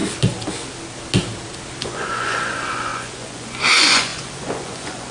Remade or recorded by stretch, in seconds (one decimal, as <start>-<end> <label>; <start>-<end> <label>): 0.0-1.8 recorded; 1.8-5.1 remade